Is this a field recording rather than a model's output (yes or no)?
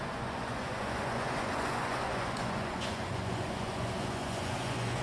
no